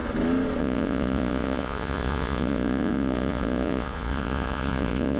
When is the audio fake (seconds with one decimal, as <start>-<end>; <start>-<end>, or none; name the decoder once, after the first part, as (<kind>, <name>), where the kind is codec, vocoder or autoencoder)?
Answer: 0.6-5.2 (vocoder, Vocos)